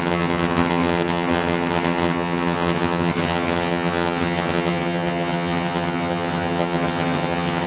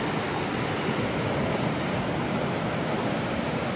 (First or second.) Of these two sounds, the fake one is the first